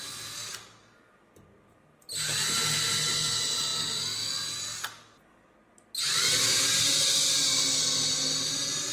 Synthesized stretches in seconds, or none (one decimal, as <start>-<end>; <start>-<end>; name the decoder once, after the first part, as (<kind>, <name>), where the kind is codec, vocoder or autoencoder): none